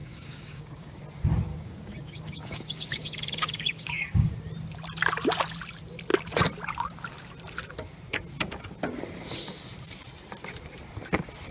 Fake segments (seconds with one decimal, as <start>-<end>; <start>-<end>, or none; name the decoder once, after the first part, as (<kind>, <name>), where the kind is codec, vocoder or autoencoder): 0.0-1.0 (codec, DAC); 1.5-4.3